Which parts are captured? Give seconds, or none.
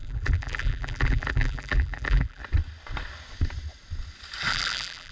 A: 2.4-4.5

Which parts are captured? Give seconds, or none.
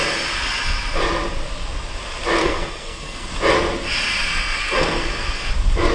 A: 0.0-2.4; 3.3-4.3; 5.5-5.9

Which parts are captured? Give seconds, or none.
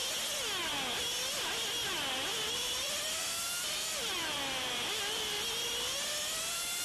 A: 0.0-2.3